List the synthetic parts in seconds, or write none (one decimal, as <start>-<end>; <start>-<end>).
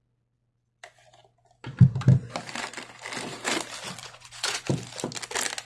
4.0-4.7